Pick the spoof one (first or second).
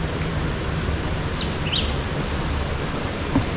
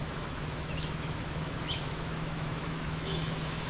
second